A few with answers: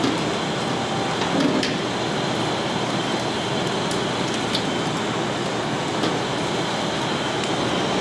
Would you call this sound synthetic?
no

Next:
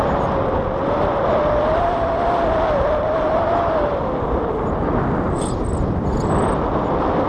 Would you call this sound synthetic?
no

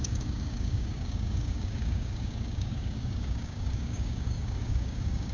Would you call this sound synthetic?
yes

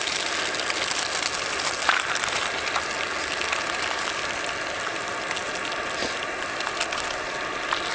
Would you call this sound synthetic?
no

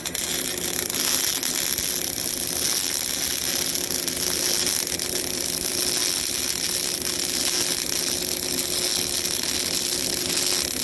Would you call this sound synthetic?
no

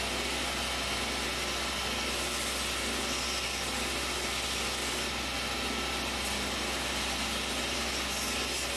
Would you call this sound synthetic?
no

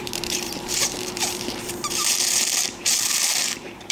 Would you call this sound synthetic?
yes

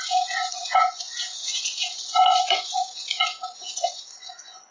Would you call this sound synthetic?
yes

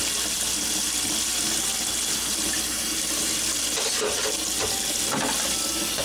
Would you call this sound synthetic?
no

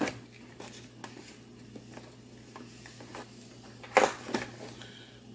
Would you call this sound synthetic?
no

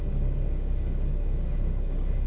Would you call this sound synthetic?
yes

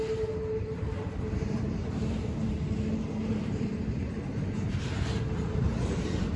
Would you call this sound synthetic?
yes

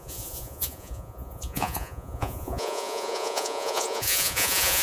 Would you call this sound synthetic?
yes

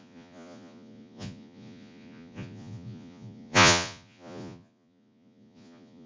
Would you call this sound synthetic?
yes